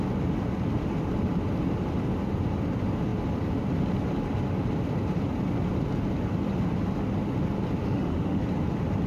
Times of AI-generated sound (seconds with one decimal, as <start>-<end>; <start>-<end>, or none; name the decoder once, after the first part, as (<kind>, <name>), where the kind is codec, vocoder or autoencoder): 7.8-8.4 (autoencoder, DAC-VAE)

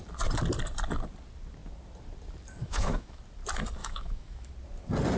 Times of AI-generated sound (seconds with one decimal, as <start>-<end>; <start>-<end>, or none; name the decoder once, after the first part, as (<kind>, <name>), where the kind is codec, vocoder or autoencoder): 2.6-3.2 (autoencoder, DAC-VAE); 3.8-4.5

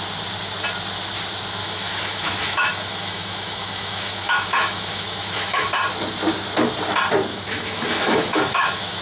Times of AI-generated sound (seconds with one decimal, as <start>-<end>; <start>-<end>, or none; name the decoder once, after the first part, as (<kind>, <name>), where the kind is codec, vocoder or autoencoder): 1.6-5.7 (autoencoder, DAC-VAE); 7.3-9.0

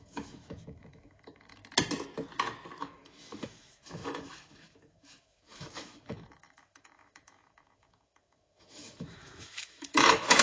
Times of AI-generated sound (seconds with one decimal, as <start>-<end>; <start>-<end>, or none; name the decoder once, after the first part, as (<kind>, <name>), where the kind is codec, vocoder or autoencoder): 0.0-1.6 (autoencoder, DAC-VAE); 2.8-10.4

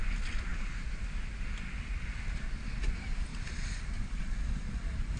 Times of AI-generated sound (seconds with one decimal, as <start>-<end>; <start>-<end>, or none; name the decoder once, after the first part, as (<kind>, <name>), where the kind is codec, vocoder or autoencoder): none

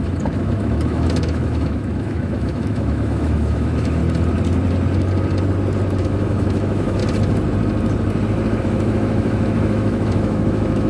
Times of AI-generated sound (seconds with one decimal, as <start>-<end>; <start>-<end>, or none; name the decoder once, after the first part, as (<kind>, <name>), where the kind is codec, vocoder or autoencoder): 0.0-4.0 (autoencoder, DAC-VAE); 6.0-7.0; 8.6-10.9

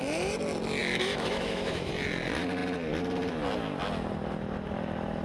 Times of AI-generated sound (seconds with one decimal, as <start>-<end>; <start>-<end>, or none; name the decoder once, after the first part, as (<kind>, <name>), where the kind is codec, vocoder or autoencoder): 0.8-1.9 (autoencoder, DAC-VAE)

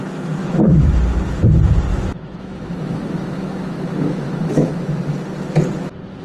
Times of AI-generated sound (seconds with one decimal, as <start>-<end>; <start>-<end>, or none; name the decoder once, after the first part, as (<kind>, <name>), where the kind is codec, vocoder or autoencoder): 0.4-0.9 (autoencoder, DAC-VAE); 1.9-5.0